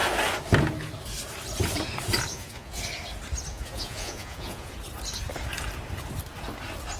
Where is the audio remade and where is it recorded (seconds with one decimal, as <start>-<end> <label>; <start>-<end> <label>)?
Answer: 0.0-2.3 recorded; 2.3-2.8 remade; 2.8-3.5 recorded; 3.5-4.7 remade; 4.7-7.0 recorded